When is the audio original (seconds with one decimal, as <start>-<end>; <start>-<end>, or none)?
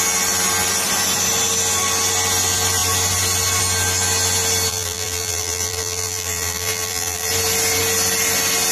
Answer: 0.0-4.7; 7.3-8.7